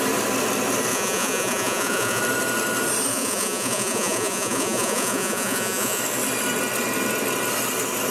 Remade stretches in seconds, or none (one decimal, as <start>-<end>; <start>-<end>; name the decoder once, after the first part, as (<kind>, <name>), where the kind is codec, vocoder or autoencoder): 0.9-2.2 (vocoder, Vocos); 3.1-6.0